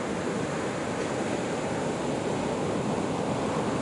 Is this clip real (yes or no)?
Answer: yes